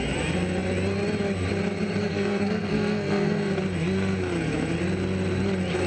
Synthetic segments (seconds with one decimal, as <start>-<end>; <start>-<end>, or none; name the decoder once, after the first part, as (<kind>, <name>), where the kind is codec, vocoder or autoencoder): 2.0-3.5 (codec, SNAC)